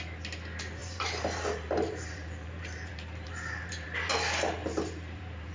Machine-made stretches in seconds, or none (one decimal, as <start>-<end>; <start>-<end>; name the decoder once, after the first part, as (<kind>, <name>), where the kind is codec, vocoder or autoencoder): 0.8-4.1 (vocoder, BigVGAN v2); 4.6-5.5